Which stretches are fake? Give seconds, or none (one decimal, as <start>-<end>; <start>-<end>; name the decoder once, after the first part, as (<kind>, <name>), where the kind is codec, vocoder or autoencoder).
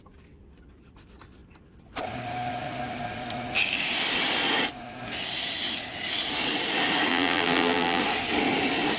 7.1-8.0 (vocoder, BigVGAN v2)